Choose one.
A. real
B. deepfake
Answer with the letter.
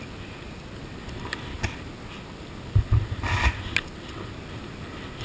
A